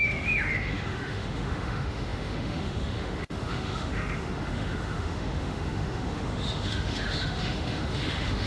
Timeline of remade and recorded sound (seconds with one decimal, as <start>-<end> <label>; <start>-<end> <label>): 0.0-8.5 remade